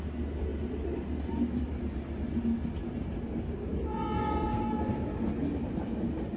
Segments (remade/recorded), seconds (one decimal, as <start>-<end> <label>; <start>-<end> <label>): 0.0-3.9 recorded; 3.9-4.8 remade; 4.8-6.4 recorded